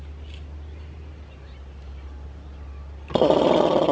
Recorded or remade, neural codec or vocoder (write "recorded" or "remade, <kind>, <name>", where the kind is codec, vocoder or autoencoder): recorded